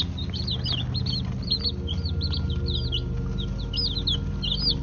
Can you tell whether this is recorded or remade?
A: recorded